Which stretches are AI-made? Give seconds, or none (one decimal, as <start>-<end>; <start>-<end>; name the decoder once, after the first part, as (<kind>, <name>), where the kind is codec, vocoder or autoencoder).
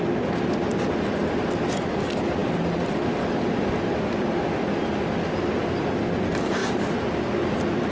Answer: none